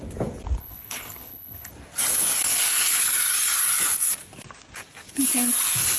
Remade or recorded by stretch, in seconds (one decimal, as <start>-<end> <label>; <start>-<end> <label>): 0.0-0.6 recorded; 0.6-1.7 remade; 1.7-2.5 recorded; 2.5-3.0 remade; 3.0-6.0 recorded